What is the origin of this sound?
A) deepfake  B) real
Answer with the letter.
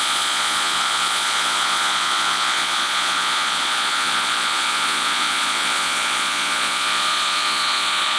A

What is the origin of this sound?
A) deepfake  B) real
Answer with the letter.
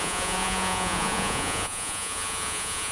A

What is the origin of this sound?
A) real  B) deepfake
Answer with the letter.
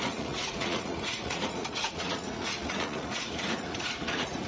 B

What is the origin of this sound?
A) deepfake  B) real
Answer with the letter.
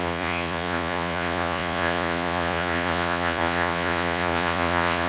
A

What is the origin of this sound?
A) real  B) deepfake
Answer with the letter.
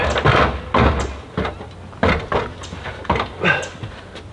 A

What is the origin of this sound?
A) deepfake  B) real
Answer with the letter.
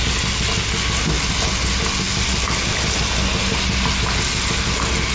B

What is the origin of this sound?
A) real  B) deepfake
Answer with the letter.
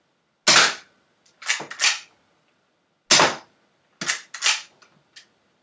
A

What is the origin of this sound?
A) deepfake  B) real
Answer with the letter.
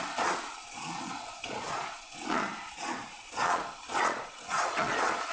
A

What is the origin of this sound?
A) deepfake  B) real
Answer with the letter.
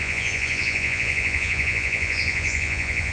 A